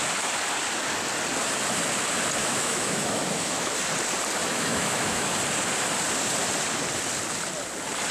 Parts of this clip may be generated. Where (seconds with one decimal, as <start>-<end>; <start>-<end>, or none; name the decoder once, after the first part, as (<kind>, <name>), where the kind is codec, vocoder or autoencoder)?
2.4-3.7 (autoencoder, DAC-VAE); 4.4-5.3